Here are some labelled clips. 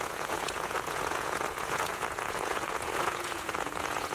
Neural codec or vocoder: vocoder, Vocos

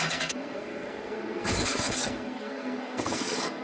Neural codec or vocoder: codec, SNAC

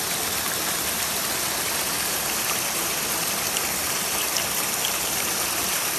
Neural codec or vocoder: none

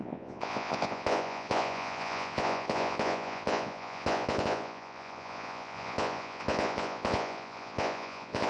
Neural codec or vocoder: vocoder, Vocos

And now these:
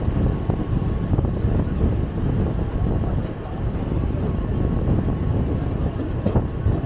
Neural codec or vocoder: none